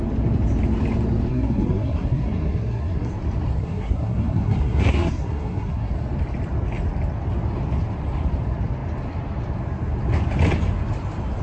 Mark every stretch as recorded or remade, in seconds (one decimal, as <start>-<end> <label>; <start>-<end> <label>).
0.0-1.3 recorded; 1.3-3.1 remade; 3.1-3.6 recorded; 3.6-5.9 remade; 5.9-11.4 recorded